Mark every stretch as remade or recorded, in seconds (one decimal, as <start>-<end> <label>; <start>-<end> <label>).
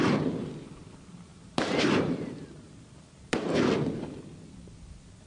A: 0.0-5.3 recorded